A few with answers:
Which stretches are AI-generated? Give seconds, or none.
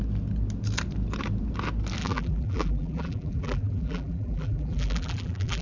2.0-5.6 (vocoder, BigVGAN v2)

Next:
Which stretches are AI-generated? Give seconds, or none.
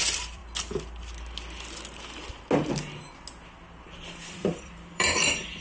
0.0-0.4 (vocoder, BigVGAN v2); 3.8-5.6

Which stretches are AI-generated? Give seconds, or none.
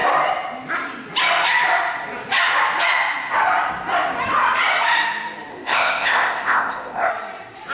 5.5-7.1 (codec, ZipCodec)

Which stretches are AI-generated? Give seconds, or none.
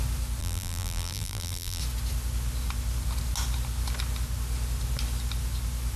0.4-1.8 (vocoder, BigVGAN v2)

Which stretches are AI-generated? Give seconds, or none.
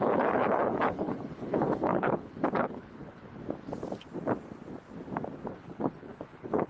0.0-3.4 (codec, HILCodec); 5.5-6.7